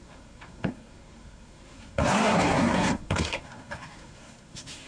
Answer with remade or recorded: remade